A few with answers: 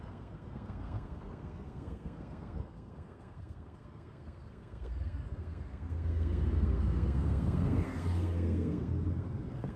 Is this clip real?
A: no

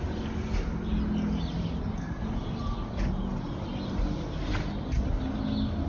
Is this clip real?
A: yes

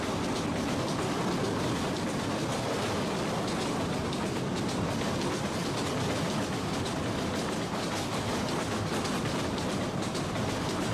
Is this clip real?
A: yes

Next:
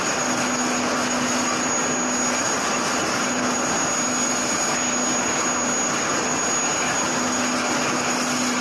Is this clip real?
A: yes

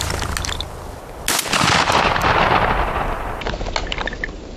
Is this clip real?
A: yes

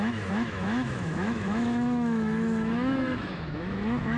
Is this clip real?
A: no